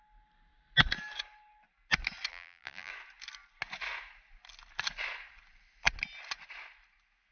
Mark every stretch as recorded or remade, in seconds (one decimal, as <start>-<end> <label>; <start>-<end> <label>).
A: 0.0-2.3 recorded; 2.3-2.9 remade; 2.9-7.3 recorded